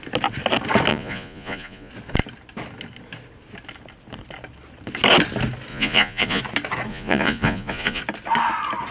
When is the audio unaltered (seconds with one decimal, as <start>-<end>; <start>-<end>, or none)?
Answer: 0.0-0.9; 1.9-5.7; 6.4-6.9; 8.0-8.9